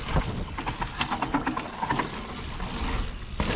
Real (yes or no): yes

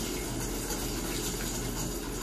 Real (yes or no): yes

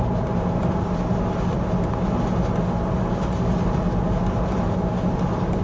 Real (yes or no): yes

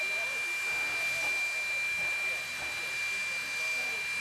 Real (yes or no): yes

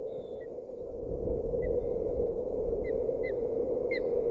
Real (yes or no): no